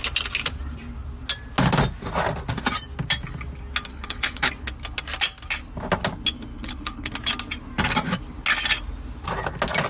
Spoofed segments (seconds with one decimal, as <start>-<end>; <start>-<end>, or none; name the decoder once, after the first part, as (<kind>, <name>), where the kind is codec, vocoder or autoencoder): 3.9-4.5 (codec, HILCodec); 6.5-7.1